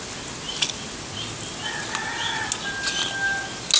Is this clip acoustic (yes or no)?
yes